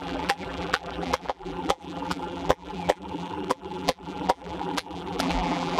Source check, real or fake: fake